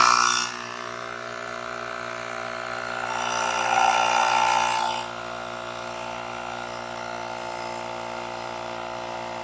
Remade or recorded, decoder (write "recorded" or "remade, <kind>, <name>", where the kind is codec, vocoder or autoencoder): recorded